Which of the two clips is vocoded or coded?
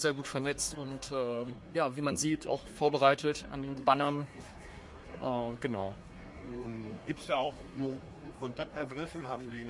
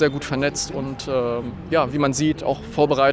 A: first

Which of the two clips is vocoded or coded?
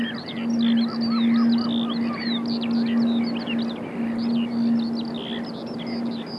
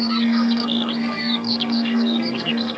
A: second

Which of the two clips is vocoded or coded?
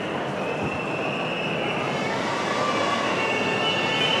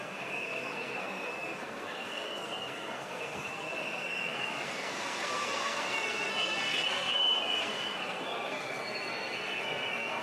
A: second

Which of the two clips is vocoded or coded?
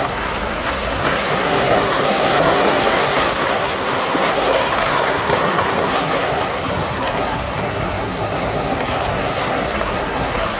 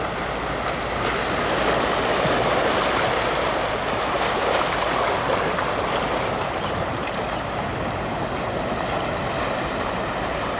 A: first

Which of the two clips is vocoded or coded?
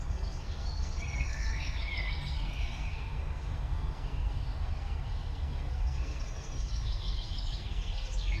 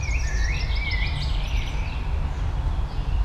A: first